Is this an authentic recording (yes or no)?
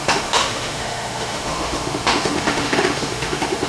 no